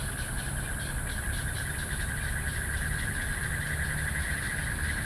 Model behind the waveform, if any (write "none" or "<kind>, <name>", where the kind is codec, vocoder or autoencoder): none